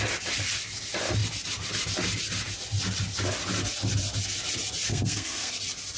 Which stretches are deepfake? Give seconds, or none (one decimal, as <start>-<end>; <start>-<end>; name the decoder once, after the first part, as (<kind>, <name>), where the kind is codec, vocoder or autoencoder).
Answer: 4.9-5.5 (codec, SNAC)